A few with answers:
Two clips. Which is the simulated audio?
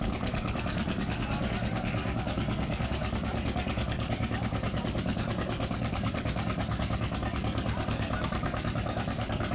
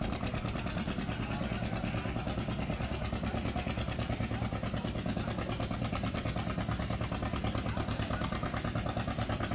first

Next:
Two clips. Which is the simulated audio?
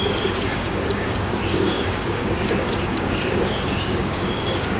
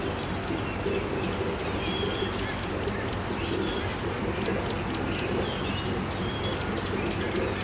first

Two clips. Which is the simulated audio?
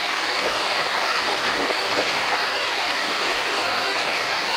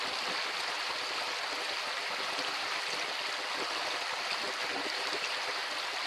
first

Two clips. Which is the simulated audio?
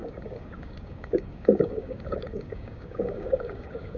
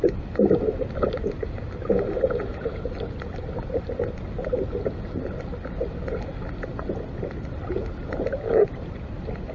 first